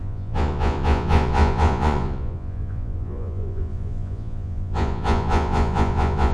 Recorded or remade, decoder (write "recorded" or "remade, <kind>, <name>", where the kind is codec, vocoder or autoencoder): remade, vocoder, Vocos